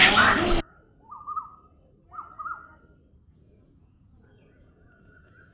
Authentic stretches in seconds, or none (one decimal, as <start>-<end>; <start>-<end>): 0.0-3.3